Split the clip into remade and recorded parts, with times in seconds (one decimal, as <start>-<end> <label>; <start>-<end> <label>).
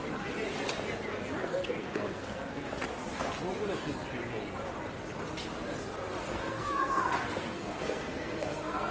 0.0-1.4 recorded; 1.4-2.7 remade; 2.7-6.2 recorded; 6.2-8.9 remade